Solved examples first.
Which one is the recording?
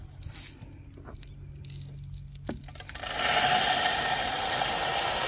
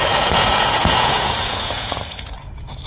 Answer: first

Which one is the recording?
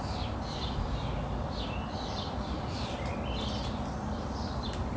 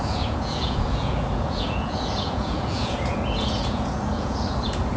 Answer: first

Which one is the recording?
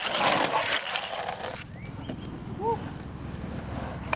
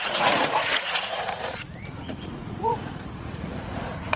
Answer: first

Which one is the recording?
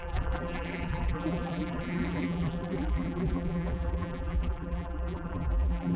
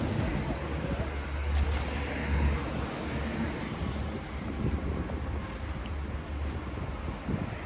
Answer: second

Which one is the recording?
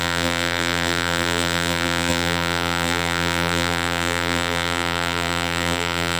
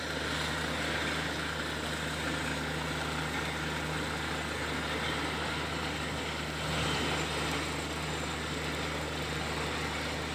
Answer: second